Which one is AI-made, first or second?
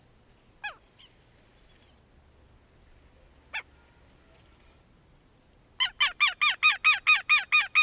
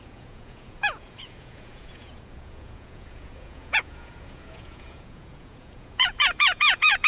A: second